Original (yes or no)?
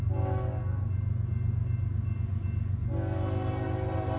yes